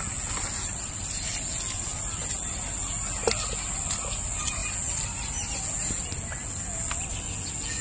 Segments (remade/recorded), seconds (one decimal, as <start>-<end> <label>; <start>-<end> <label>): 0.0-7.8 recorded